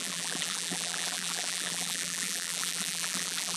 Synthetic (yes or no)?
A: yes